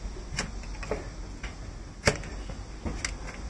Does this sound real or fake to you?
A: real